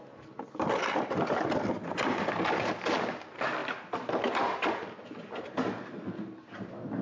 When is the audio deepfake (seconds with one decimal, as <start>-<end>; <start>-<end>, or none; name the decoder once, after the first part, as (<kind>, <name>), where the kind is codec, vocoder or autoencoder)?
none

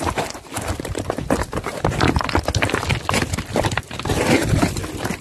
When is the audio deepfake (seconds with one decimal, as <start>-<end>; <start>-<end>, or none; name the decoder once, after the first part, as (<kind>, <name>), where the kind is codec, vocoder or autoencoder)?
none

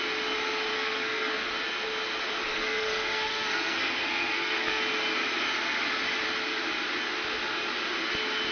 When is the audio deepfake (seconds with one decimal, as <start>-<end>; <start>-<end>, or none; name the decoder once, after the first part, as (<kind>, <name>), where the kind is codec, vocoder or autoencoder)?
0.7-1.5 (codec, SNAC); 2.5-4.8

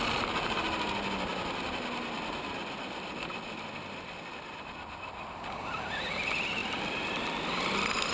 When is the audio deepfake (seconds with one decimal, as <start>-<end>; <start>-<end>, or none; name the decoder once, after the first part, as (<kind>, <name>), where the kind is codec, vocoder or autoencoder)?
none

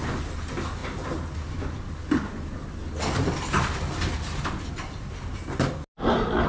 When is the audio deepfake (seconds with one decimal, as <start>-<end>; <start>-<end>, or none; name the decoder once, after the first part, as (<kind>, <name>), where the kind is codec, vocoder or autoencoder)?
none